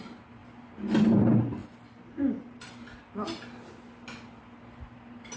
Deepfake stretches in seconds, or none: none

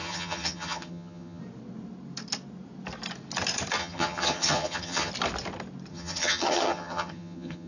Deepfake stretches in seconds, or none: 0.0-1.4 (vocoder, HiFi-GAN); 3.8-5.1; 5.9-7.7

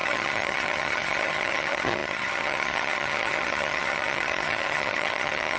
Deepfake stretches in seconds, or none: 0.0-5.6 (vocoder, HiFi-GAN)

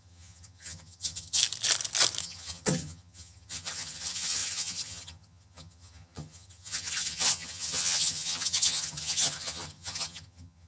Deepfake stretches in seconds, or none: 0.0-1.4 (vocoder, HiFi-GAN); 2.2-10.7

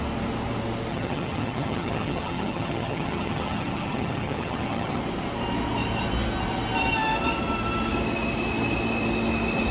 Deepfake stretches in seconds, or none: 0.9-5.0 (vocoder, HiFi-GAN)

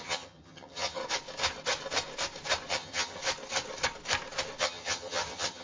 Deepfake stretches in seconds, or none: 0.0-1.0 (vocoder, HiFi-GAN); 2.7-3.2; 4.6-5.6

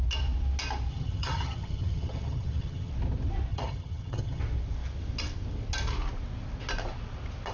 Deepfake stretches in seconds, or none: 0.9-2.9 (vocoder, HiFi-GAN); 3.5-4.4

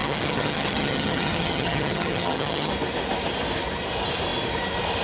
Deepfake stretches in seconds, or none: 0.0-2.7 (vocoder, HiFi-GAN)